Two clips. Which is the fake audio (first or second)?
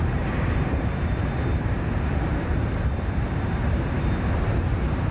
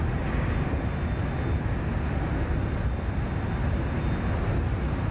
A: first